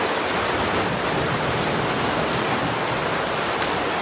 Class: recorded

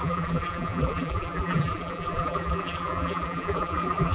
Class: remade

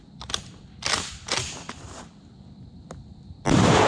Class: recorded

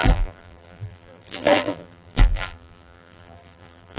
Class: remade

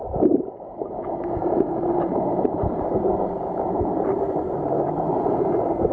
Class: remade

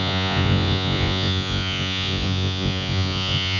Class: remade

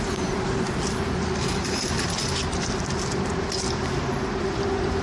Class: recorded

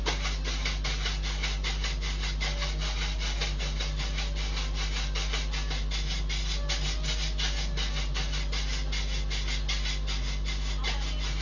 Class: recorded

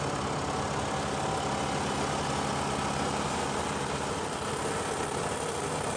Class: recorded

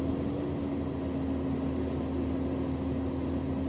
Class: recorded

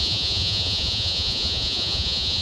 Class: remade